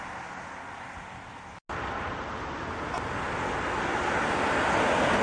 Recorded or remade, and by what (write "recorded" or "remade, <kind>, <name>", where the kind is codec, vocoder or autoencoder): recorded